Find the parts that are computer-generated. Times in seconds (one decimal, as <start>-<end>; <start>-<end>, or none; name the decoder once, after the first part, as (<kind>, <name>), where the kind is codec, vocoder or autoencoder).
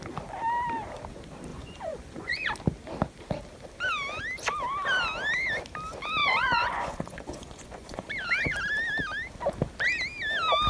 1.5-2.5 (vocoder, Vocos); 6.2-8.1